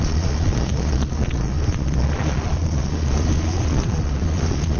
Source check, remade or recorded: remade